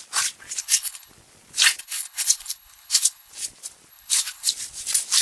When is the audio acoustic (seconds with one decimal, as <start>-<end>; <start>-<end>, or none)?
0.0-0.6; 1.1-1.8; 3.3-3.9; 4.5-5.2